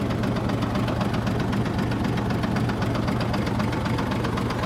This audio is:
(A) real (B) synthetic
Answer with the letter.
A